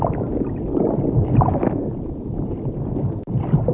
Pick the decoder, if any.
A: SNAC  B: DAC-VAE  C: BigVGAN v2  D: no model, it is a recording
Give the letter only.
D